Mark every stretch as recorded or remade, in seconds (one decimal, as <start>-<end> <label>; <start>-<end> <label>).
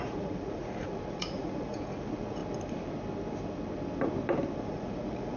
0.0-2.4 remade; 2.4-4.6 recorded; 4.6-5.4 remade